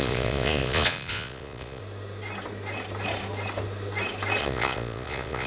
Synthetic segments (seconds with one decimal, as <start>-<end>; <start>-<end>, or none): 0.0-1.8; 4.4-5.5